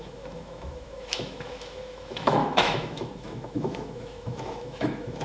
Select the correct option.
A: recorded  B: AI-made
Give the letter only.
B